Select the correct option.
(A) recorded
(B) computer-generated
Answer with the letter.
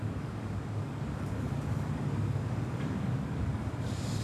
B